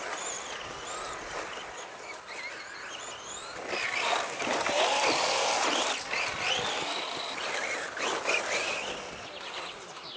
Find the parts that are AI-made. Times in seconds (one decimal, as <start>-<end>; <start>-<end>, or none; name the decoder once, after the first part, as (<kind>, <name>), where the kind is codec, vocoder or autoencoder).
none